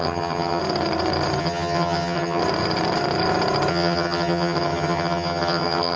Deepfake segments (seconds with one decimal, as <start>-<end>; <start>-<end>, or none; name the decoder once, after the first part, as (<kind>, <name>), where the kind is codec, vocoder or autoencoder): 0.0-0.6 (vocoder, HiFi-GAN); 1.4-2.4; 3.7-6.0